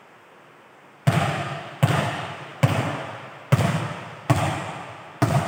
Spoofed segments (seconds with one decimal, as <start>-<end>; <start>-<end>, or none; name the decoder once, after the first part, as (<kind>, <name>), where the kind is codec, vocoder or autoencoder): none